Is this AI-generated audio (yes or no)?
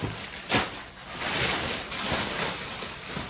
no